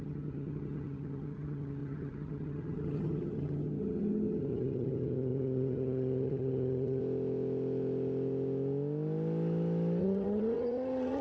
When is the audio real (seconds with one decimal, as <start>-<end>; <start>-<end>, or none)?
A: 7.0-10.0